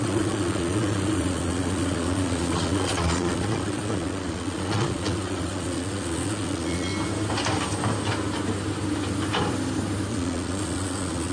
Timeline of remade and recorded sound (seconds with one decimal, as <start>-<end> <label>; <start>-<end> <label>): 0.0-6.9 remade; 6.9-10.1 recorded; 10.1-11.3 remade